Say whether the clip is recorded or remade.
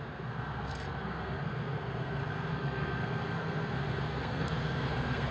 remade